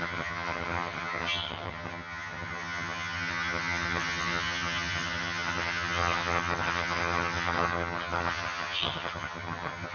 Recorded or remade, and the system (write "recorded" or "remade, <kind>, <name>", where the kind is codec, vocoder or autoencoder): remade, vocoder, HiFi-GAN